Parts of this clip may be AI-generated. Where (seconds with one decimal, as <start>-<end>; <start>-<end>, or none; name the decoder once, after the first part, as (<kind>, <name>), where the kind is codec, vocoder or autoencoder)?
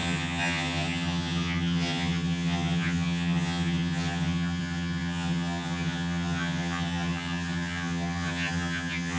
0.0-9.2 (vocoder, HiFi-GAN)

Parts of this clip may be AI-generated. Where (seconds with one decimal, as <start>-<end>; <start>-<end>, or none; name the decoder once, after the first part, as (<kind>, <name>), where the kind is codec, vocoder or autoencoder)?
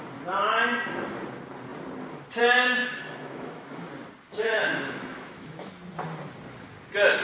2.8-3.9 (autoencoder, DAC-VAE); 4.3-5.7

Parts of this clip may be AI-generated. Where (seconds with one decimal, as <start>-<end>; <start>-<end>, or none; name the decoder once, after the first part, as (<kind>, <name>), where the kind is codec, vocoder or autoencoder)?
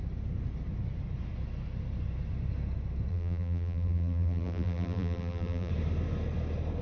3.1-5.7 (vocoder, BigVGAN v2)